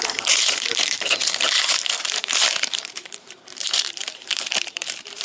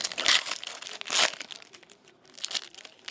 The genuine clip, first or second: second